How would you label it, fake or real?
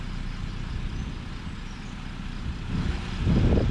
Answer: real